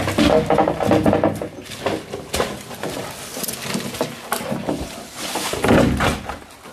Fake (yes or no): no